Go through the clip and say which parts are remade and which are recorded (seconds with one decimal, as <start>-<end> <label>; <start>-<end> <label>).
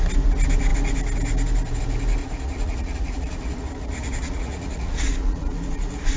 0.0-2.2 recorded; 2.2-6.2 remade